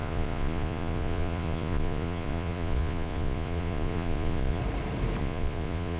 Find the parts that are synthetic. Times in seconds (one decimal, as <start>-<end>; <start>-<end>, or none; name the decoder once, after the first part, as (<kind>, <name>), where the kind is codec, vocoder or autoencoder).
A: 0.0-4.6 (vocoder, Vocos); 5.2-6.0